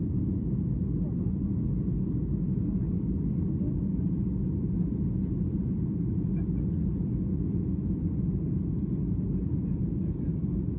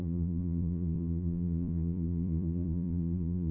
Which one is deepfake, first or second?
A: second